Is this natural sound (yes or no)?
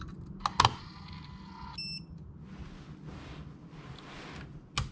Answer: yes